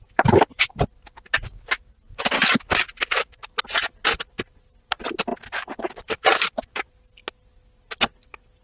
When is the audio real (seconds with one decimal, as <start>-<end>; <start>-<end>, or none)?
0.0-8.6